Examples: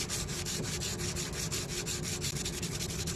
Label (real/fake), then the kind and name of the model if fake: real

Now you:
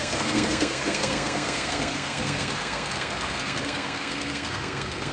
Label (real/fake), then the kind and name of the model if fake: fake, codec, SNAC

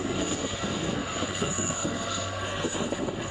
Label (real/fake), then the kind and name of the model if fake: fake, codec, SNAC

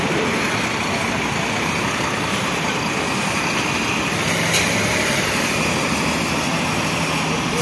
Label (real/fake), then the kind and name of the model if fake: real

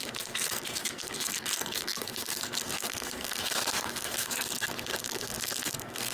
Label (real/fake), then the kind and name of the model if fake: fake, codec, SNAC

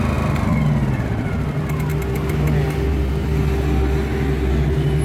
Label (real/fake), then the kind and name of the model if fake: real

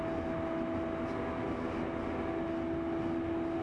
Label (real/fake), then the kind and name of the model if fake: real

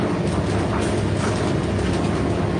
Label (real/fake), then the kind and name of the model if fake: real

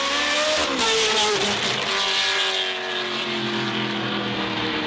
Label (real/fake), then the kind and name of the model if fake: real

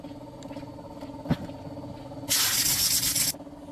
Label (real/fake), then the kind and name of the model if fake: real